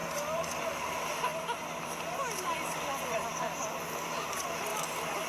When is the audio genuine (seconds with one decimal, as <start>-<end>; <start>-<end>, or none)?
0.6-4.7